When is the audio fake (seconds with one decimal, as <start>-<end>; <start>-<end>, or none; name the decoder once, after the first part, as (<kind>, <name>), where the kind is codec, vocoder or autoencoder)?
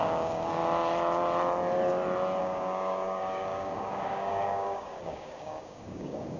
0.0-0.6 (codec, DAC); 2.4-6.4